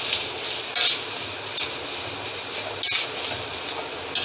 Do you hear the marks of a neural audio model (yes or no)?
no